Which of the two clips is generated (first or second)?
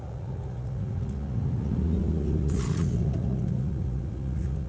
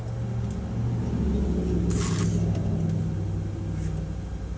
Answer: first